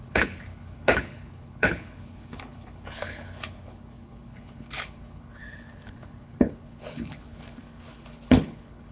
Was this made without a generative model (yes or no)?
no